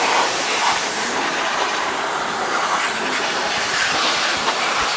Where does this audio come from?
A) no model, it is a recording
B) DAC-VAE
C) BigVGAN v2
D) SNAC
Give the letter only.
C